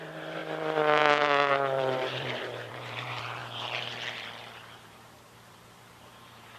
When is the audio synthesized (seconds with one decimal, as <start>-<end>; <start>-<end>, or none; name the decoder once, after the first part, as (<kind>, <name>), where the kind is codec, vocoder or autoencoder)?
0.0-6.6 (vocoder, BigVGAN v2)